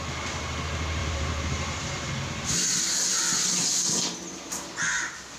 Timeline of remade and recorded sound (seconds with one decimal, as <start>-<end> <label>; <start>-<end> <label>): 0.0-1.0 recorded; 1.0-2.1 remade; 2.1-5.4 recorded